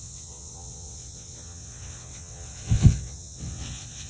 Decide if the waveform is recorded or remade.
remade